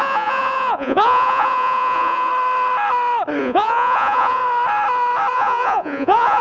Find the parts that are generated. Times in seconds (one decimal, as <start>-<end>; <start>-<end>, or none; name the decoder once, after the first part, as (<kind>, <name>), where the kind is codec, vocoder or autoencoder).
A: 0.0-2.3 (vocoder, Vocos); 3.4-4.4; 5.3-6.4